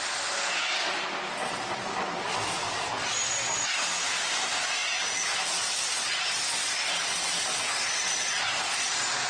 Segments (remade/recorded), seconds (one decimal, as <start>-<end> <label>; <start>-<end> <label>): 0.0-9.3 recorded